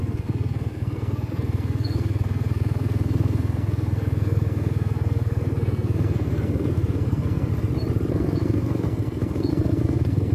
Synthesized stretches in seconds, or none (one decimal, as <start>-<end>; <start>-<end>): 0.0-7.5; 8.1-10.3